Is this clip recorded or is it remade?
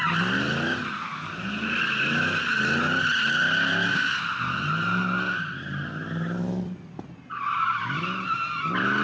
recorded